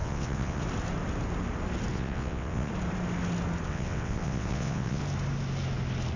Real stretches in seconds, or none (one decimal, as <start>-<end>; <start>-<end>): 0.6-1.9; 2.7-3.7; 5.0-6.2